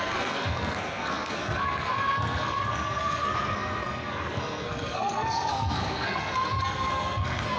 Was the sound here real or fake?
fake